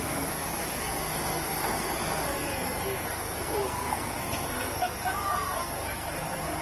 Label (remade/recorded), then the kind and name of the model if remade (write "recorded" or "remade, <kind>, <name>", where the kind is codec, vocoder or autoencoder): remade, codec, SNAC